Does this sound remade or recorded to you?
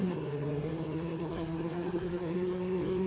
remade